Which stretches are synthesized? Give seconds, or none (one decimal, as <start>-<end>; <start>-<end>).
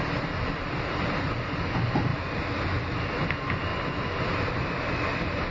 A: none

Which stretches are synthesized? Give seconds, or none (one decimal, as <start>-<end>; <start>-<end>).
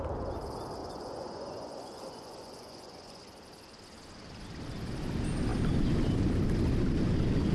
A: 0.8-3.2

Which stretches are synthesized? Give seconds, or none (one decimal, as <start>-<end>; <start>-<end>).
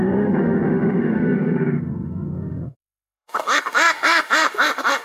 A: 0.0-5.0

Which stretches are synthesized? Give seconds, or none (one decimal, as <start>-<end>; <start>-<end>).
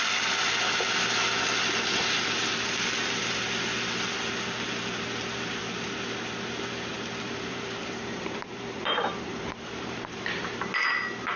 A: 6.9-10.7